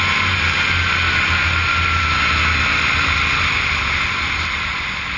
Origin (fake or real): real